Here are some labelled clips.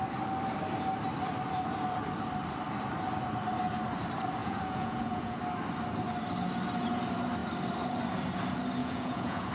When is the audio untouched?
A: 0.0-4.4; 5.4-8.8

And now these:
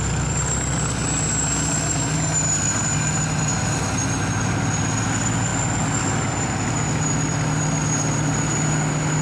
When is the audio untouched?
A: 0.0-9.2

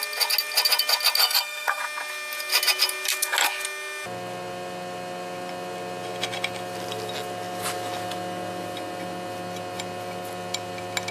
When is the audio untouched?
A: 0.0-1.2; 1.8-11.1

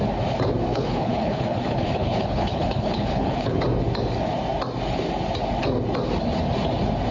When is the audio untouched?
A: 0.0-0.7; 3.6-7.1

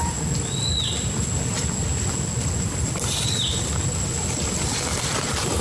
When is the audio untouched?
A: 0.0-5.6

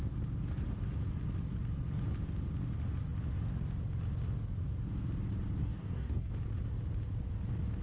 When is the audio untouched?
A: 0.0-5.6; 6.3-7.8